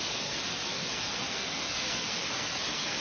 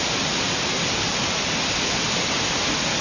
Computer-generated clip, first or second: first